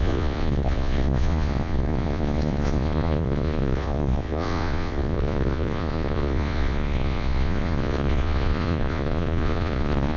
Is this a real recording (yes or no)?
no